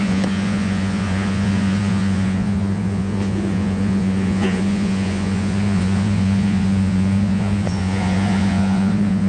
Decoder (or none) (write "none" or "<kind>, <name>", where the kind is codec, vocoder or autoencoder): vocoder, Vocos